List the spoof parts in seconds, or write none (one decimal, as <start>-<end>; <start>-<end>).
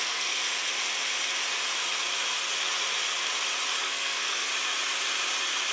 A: 0.0-0.4; 3.8-4.5